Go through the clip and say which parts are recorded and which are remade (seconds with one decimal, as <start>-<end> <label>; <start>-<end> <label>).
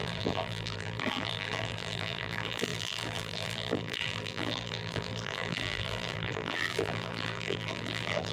0.0-8.3 remade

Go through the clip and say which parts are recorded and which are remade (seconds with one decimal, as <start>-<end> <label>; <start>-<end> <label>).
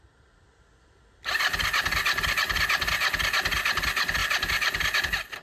0.0-5.4 recorded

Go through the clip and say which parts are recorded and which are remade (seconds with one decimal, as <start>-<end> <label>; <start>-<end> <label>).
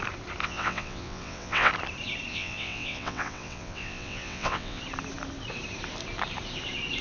0.0-0.4 recorded; 0.4-1.7 remade; 1.7-2.3 recorded; 2.3-4.8 remade; 4.8-7.0 recorded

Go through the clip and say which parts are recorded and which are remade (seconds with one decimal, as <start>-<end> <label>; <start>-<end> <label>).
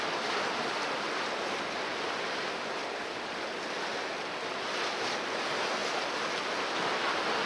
0.0-7.5 recorded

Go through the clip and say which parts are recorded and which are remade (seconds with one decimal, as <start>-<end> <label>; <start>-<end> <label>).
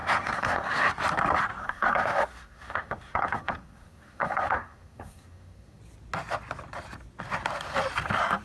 0.0-0.9 remade; 0.9-1.6 recorded; 1.6-5.8 remade; 5.8-8.4 recorded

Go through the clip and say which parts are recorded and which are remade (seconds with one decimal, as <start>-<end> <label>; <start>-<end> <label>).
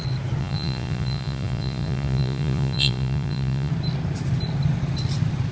0.0-0.4 recorded; 0.4-3.7 remade; 3.7-5.5 recorded